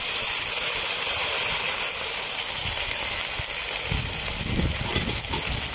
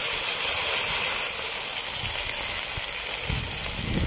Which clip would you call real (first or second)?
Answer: second